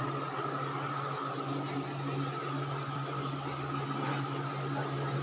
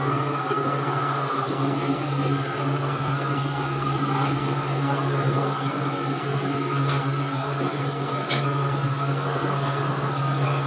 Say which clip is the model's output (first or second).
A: second